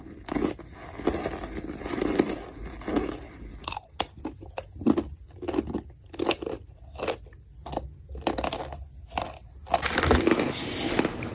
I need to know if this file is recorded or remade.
recorded